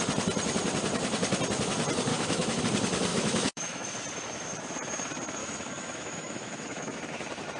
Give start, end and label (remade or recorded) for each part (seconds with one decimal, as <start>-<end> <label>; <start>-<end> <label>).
0.0-2.1 recorded; 2.1-2.6 remade; 2.6-3.1 recorded; 3.1-3.9 remade; 3.9-5.4 recorded; 5.4-7.0 remade; 7.0-7.6 recorded